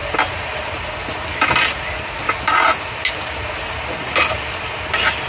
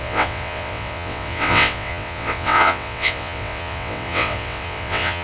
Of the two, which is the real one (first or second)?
first